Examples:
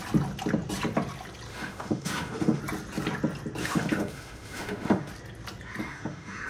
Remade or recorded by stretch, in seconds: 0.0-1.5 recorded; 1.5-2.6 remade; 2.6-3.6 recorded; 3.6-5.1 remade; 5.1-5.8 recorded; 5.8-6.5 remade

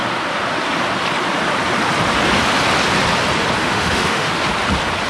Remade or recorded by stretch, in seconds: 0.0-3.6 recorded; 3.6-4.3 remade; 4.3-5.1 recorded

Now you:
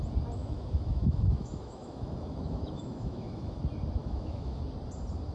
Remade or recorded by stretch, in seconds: 0.0-0.4 recorded; 0.4-3.6 remade; 3.6-4.0 recorded; 4.0-4.6 remade; 4.6-5.3 recorded